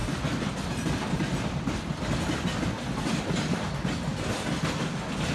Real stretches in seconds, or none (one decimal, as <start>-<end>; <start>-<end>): 0.0-5.3